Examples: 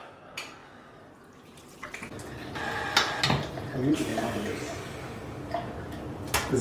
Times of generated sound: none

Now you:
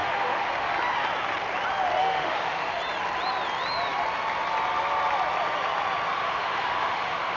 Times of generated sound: 0.0-0.7 (autoencoder, DAC-VAE); 2.0-2.8; 6.1-7.4

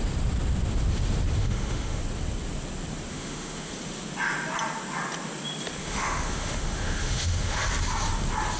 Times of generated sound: 1.4-2.0 (autoencoder, DAC-VAE); 3.1-3.7; 5.8-7.6

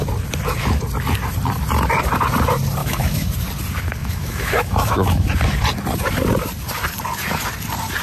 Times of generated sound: 2.8-3.3 (autoencoder, DAC-VAE); 4.0-5.3

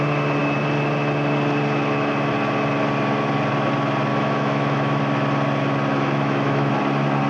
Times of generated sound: 4.1-5.0 (autoencoder, DAC-VAE); 5.9-6.7